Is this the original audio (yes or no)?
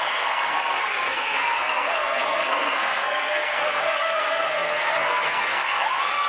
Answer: no